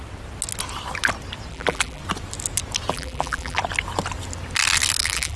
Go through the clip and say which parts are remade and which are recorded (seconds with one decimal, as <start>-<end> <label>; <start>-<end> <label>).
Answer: 0.0-1.5 recorded; 1.5-2.0 remade; 2.0-2.9 recorded; 2.9-3.6 remade; 3.6-5.0 recorded; 5.0-5.4 remade